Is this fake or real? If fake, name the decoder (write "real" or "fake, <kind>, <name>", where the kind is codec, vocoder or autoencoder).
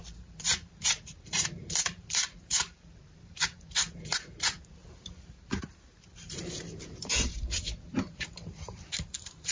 fake, vocoder, BigVGAN v2